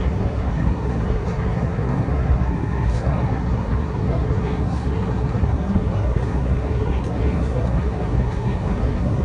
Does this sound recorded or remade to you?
remade